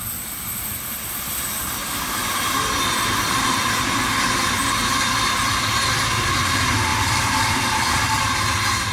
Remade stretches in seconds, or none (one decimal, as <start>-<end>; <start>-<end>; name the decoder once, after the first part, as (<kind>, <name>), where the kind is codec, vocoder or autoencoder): 1.8-4.2 (vocoder, BigVGAN v2); 6.9-8.0